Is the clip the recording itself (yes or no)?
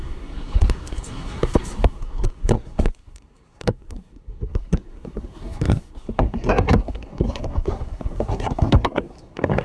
no